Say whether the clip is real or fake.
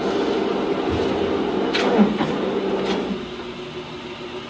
real